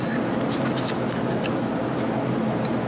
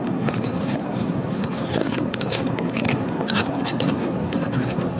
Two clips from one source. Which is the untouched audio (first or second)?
first